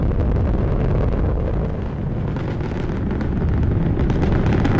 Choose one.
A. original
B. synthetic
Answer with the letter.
A